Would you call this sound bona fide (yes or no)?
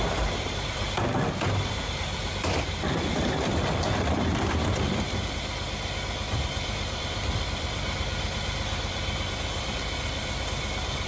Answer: no